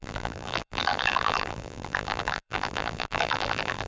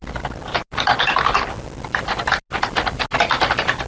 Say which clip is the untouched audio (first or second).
second